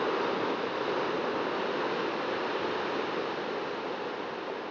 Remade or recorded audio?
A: recorded